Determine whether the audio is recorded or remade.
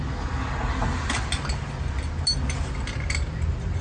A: recorded